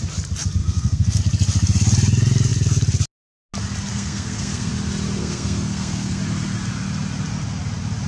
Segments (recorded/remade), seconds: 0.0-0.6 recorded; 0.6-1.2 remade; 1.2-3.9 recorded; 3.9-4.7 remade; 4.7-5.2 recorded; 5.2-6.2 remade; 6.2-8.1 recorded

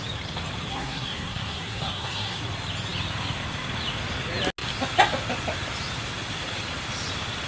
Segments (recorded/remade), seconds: 0.0-0.7 recorded; 0.7-2.4 remade; 2.4-7.5 recorded

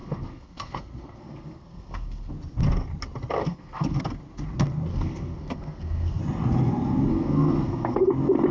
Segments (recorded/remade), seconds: 0.0-2.3 remade; 2.3-3.4 recorded; 3.4-4.0 remade; 4.0-4.9 recorded; 4.9-6.2 remade; 6.2-7.1 recorded; 7.1-8.1 remade; 8.1-8.5 recorded

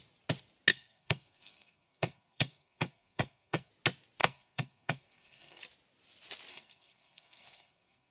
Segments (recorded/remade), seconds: 0.0-0.7 recorded; 0.7-3.7 remade; 3.7-4.2 recorded; 4.2-5.6 remade; 5.6-6.5 recorded; 6.5-8.1 remade